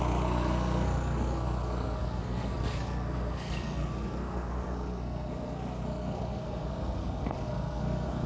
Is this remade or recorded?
remade